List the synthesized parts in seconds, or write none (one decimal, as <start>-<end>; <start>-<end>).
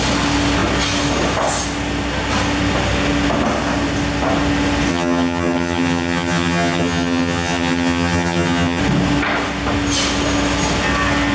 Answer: 4.9-8.8